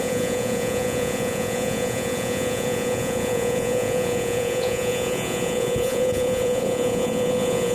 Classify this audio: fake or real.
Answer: fake